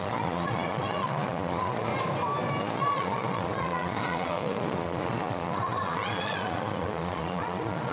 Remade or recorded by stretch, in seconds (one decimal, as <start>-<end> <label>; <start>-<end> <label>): 0.0-1.9 remade; 1.9-2.6 recorded; 2.6-7.9 remade